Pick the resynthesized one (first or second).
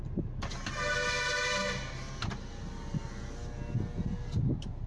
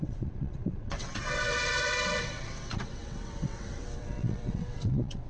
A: second